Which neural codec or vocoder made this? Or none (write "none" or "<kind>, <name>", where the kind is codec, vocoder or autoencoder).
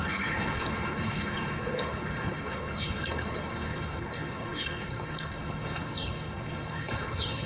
codec, HILCodec